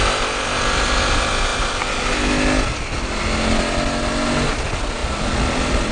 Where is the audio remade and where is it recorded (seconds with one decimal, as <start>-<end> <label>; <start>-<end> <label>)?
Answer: 0.0-5.9 recorded